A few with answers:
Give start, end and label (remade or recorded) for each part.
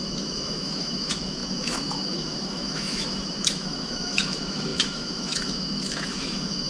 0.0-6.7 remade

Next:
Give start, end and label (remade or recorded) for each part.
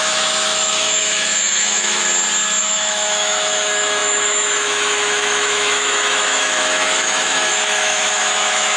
0.0-2.0 remade; 2.0-2.6 recorded; 2.6-8.8 remade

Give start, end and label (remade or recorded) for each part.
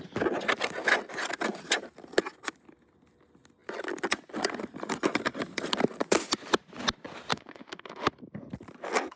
0.0-7.3 recorded; 7.3-8.1 remade; 8.1-9.2 recorded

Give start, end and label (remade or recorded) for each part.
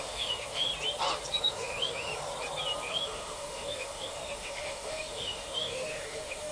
0.0-0.7 remade; 0.7-1.4 recorded; 1.4-2.1 remade; 2.1-2.9 recorded; 2.9-6.5 remade